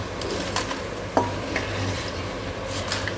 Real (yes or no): yes